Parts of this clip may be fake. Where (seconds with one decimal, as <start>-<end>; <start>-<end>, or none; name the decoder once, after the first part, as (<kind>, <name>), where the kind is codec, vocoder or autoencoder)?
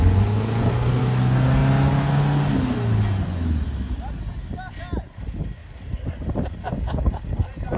none